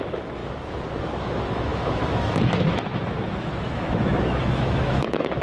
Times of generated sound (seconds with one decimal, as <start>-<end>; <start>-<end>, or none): 0.0-0.4; 1.2-5.4